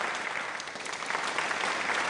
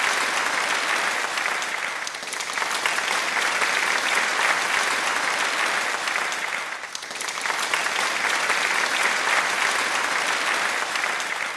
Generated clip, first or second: first